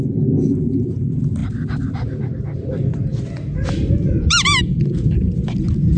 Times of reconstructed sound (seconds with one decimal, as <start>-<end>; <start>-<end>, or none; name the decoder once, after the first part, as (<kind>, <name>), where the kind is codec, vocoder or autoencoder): none